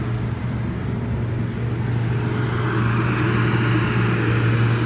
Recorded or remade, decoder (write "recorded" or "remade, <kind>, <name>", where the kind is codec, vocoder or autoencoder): recorded